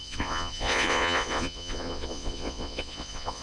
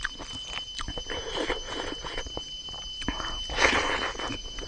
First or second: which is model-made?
first